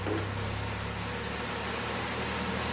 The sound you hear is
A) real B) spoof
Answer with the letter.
A